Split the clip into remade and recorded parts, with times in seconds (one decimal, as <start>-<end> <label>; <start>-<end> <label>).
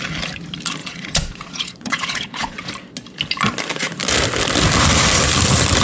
0.0-0.8 recorded; 0.8-2.7 remade; 2.7-5.8 recorded